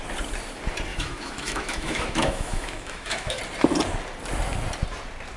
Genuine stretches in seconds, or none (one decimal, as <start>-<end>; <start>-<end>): 0.0-0.9; 3.4-5.4